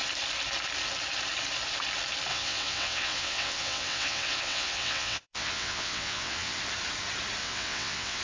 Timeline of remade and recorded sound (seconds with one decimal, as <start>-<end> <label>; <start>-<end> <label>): 0.0-2.3 recorded; 2.3-6.6 remade; 6.6-7.4 recorded; 7.4-8.2 remade